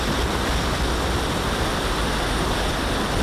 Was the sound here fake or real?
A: real